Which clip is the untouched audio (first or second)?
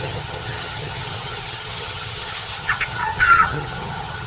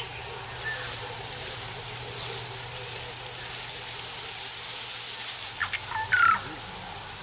second